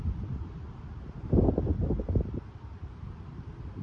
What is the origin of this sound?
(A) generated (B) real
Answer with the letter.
B